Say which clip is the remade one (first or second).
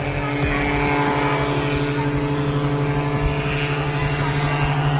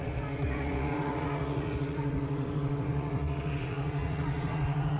second